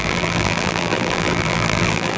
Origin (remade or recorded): remade